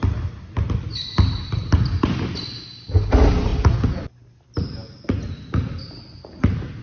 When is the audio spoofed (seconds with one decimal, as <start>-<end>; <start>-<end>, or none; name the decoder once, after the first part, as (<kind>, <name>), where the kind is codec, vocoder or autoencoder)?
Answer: none